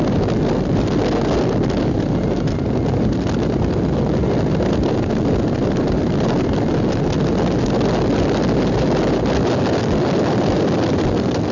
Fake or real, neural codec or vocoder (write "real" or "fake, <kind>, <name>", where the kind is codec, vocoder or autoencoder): real